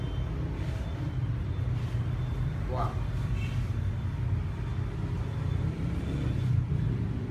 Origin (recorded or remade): recorded